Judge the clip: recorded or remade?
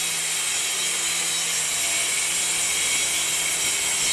recorded